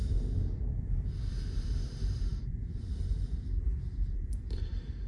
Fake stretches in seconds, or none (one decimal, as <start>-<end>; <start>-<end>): 0.0-5.1